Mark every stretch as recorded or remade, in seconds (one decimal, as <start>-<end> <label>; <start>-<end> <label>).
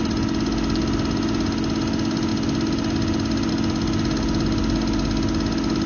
0.0-5.9 recorded